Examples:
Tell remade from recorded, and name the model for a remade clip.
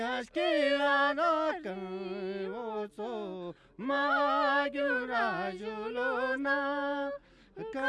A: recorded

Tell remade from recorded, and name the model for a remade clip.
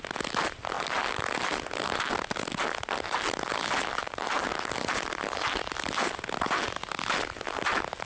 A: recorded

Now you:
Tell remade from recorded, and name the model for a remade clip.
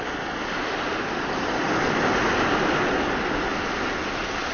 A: recorded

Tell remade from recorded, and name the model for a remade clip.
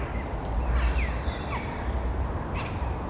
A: recorded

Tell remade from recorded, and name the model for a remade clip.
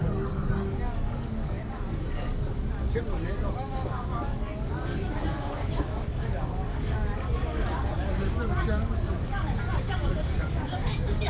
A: remade, codec, DAC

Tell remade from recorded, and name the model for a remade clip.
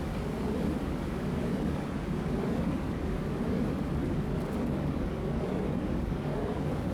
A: remade, codec, DAC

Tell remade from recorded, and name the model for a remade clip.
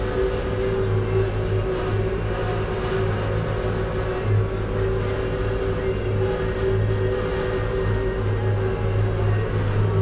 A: recorded